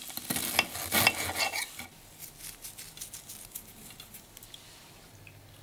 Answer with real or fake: real